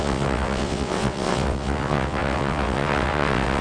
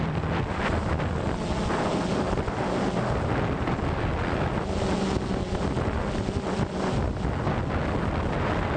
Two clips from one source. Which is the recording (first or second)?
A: second